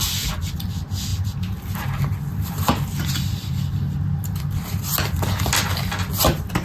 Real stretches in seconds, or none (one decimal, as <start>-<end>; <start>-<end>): 0.0-6.6